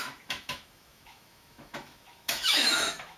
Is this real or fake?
fake